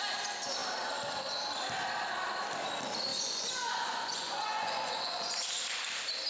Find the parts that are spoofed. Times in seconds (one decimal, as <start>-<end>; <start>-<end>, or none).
3.1-5.3